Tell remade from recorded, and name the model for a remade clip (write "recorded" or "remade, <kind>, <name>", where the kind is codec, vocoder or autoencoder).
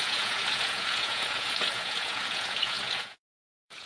remade, vocoder, Vocos